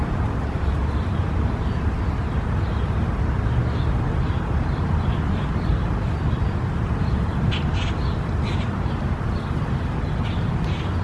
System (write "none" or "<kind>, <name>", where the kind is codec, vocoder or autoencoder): none